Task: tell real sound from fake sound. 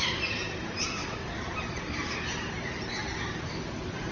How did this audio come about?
fake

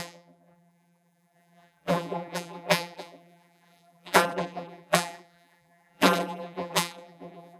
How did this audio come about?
fake